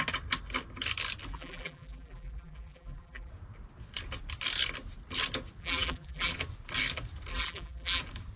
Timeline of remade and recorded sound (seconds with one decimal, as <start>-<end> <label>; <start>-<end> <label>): 0.0-1.3 recorded; 1.3-3.3 remade; 3.3-5.6 recorded; 5.6-6.3 remade; 6.3-7.3 recorded; 7.3-8.0 remade; 8.0-8.4 recorded